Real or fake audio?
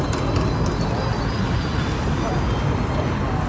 real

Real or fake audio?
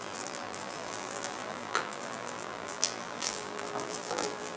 fake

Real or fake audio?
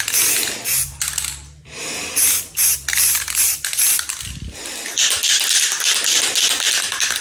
real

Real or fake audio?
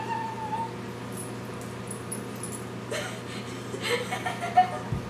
real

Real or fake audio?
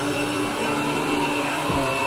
fake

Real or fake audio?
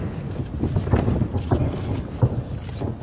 real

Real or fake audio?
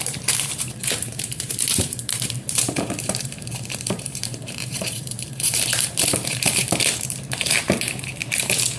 fake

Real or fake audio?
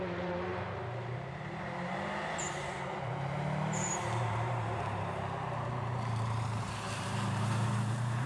fake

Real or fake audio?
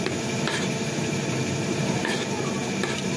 fake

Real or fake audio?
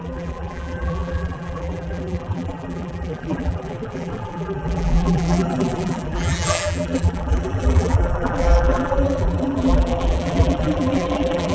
fake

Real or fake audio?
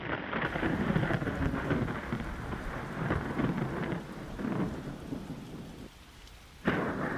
fake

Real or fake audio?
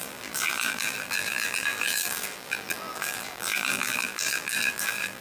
fake